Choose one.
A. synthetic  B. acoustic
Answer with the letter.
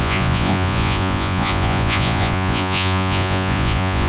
A